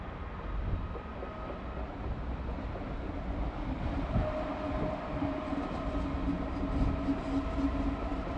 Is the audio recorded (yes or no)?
yes